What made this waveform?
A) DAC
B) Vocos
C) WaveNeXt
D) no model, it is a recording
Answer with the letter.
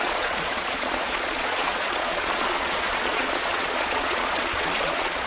B